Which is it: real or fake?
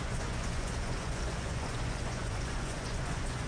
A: fake